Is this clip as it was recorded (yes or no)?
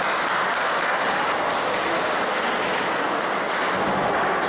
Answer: yes